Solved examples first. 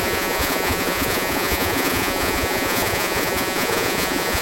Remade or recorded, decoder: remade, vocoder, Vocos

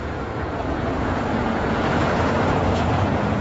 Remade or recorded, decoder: remade, vocoder, Vocos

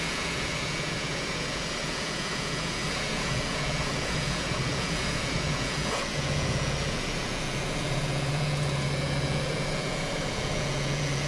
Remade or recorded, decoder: remade, vocoder, Vocos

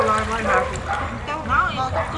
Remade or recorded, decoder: recorded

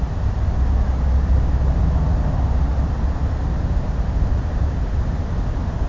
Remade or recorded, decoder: recorded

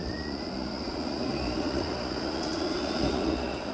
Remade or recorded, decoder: remade, vocoder, Vocos